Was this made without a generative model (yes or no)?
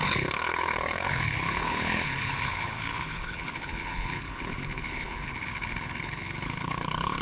no